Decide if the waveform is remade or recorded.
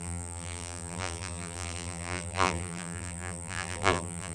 remade